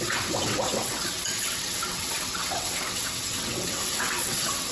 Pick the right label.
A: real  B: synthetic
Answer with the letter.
B